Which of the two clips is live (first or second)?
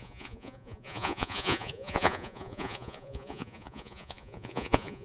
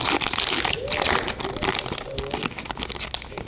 second